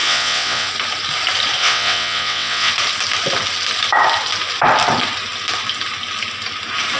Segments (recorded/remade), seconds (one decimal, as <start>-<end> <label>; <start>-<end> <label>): 0.0-0.7 remade; 0.7-1.6 recorded; 1.6-2.7 remade; 2.7-7.0 recorded